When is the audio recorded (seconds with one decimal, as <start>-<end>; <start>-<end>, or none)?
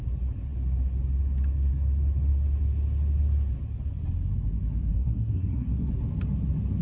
0.0-4.9; 5.9-6.8